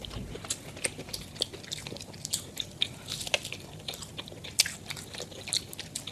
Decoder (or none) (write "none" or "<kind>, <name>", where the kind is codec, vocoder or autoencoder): none